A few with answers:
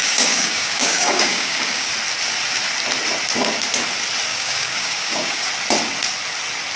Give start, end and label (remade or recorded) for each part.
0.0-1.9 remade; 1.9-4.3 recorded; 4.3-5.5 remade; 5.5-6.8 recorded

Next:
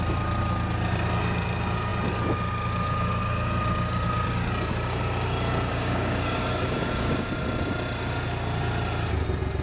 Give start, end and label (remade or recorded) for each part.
0.0-5.7 recorded; 5.7-7.3 remade; 7.3-9.6 recorded

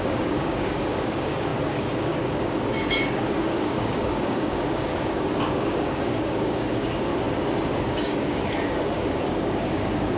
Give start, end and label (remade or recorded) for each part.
0.0-7.1 remade; 7.1-7.8 recorded; 7.8-10.2 remade